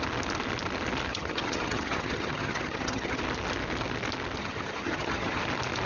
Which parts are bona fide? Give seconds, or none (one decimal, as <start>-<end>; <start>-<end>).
0.0-1.1; 3.2-4.4; 5.4-5.9